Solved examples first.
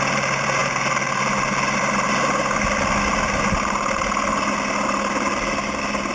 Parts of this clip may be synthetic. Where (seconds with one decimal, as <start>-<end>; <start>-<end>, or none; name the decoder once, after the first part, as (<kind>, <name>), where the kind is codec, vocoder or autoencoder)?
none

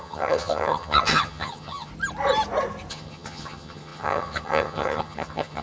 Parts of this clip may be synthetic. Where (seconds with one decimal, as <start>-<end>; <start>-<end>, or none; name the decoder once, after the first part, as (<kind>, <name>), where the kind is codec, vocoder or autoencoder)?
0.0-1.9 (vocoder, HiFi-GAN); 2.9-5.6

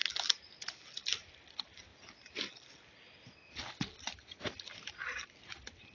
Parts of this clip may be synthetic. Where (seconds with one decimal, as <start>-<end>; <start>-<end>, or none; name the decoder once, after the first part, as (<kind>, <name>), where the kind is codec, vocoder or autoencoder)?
none